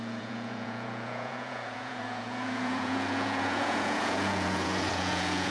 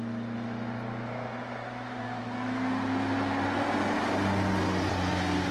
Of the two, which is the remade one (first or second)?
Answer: first